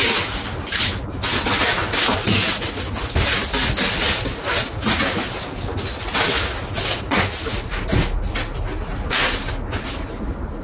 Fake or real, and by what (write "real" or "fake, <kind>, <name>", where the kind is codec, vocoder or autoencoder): real